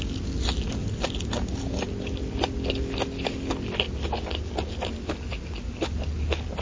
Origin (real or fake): real